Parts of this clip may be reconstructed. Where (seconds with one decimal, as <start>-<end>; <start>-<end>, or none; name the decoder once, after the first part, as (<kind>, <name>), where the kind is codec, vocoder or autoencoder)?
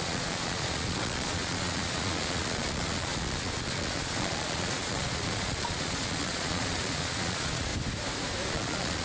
0.0-7.7 (vocoder, Vocos); 8.5-9.0